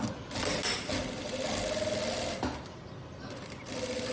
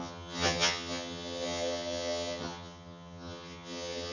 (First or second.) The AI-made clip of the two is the second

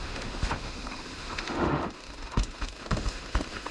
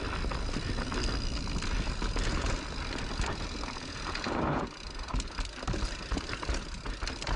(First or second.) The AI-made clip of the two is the first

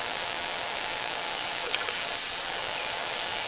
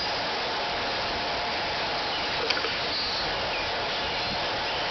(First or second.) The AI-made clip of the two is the first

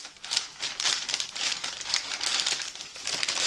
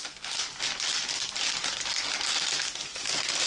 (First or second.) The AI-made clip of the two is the first